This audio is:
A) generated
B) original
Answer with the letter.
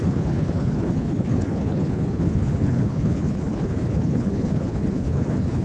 A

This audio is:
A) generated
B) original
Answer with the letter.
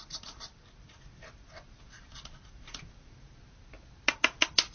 A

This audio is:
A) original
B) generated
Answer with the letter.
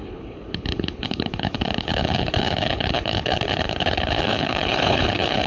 B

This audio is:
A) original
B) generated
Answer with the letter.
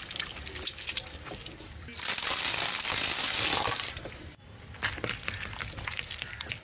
A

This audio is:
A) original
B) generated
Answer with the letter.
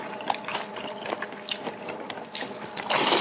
A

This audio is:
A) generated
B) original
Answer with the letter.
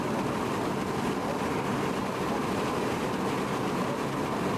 B